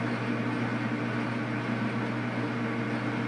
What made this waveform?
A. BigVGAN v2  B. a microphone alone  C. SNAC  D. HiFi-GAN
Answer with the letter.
B